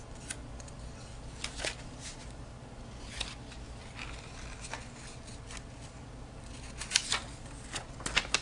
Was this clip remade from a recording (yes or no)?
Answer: no